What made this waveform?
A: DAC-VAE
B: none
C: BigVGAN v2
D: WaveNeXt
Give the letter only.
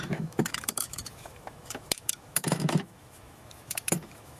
A